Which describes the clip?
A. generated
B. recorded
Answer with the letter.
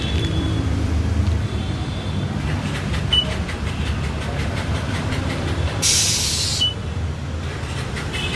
A